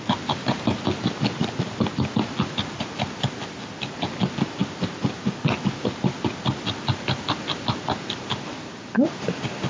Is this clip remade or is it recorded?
recorded